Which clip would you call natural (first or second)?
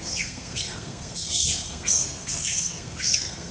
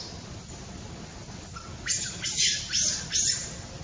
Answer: second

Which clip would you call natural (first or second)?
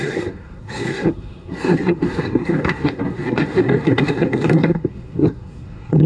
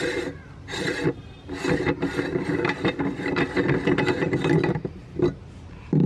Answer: second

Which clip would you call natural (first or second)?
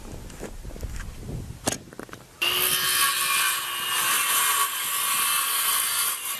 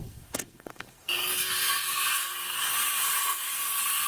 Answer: first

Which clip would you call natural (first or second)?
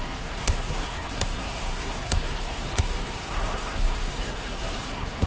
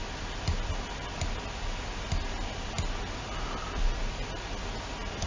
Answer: second